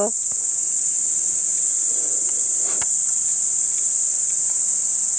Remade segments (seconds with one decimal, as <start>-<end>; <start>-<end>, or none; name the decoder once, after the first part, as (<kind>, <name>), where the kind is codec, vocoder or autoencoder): 1.5-2.6 (vocoder, BigVGAN v2); 3.3-5.2